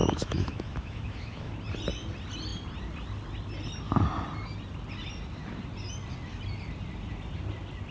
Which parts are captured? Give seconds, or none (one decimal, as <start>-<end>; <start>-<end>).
1.5-7.9

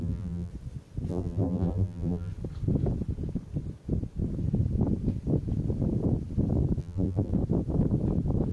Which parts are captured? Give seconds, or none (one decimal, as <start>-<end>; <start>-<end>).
0.5-1.1; 2.3-6.8; 7.3-8.5

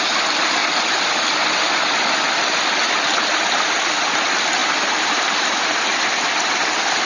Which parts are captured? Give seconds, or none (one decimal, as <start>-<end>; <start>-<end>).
0.0-4.6; 5.7-7.1

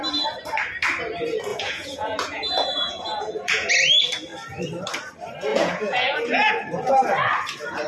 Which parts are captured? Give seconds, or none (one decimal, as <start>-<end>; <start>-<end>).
0.0-1.5; 3.7-5.5; 6.5-7.9

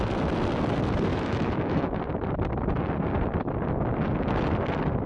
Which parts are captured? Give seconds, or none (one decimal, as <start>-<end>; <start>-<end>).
0.0-1.1; 2.0-5.1

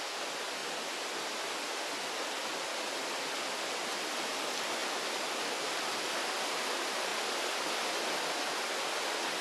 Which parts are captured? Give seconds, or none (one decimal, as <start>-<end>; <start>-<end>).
0.0-9.4

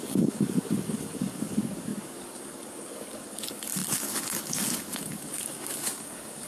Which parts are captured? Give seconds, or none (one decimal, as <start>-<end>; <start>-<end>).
none